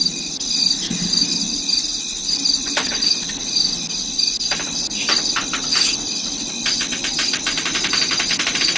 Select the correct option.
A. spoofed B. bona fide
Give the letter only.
B